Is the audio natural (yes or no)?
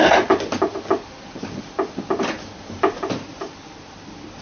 yes